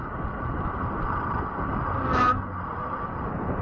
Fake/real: real